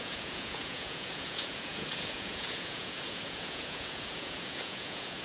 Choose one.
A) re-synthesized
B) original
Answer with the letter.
A